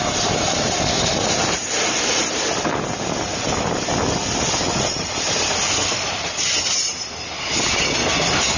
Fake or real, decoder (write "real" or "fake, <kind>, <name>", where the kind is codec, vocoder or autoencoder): real